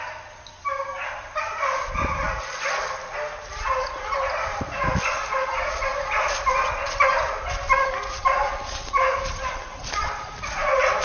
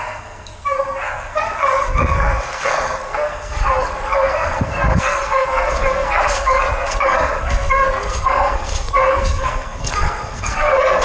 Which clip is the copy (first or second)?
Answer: second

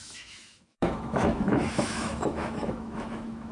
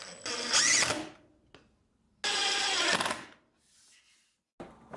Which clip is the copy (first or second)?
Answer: first